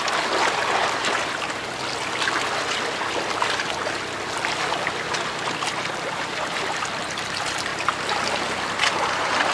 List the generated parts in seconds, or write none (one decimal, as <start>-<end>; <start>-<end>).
none